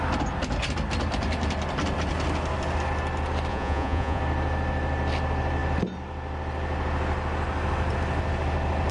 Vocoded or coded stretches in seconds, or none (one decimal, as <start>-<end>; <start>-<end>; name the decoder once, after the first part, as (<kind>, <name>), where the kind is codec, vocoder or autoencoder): 3.5-4.2 (vocoder, Vocos)